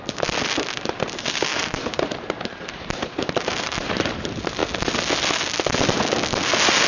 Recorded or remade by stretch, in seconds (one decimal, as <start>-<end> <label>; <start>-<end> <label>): 0.0-1.5 recorded; 1.5-4.1 remade; 4.1-6.9 recorded